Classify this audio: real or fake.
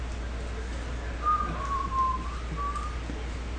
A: real